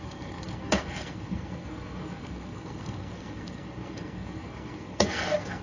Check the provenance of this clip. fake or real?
fake